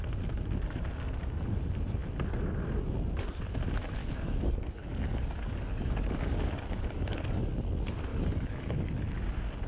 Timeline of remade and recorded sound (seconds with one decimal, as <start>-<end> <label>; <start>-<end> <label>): 0.0-4.0 recorded; 4.0-7.5 remade; 7.5-8.1 recorded; 8.1-8.7 remade; 8.7-9.7 recorded